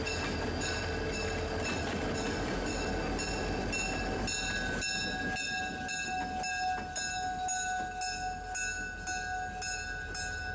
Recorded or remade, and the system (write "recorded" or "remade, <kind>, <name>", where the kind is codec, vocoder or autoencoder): recorded